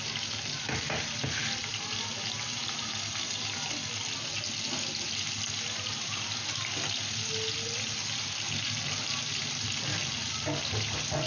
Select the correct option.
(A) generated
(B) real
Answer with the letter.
B